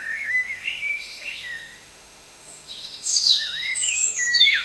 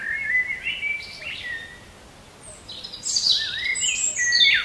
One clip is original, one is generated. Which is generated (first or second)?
first